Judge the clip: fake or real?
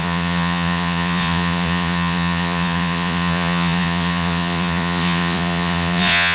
fake